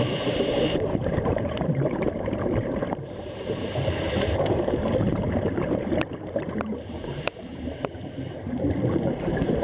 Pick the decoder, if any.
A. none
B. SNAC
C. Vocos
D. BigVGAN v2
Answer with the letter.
D